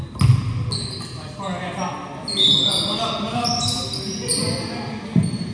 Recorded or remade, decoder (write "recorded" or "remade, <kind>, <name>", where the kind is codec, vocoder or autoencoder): recorded